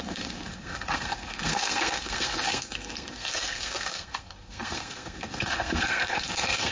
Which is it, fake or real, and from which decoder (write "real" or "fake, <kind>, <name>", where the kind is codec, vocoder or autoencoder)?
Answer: fake, codec, SNAC